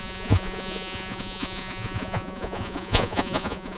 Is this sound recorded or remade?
remade